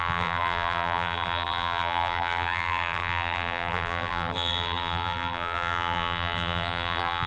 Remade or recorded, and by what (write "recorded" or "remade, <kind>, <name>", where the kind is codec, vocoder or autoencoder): remade, vocoder, BigVGAN v2